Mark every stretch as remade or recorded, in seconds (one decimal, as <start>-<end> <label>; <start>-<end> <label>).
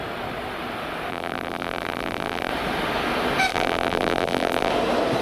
0.0-1.1 recorded; 1.1-2.5 remade; 2.5-3.5 recorded; 3.5-4.7 remade; 4.7-5.2 recorded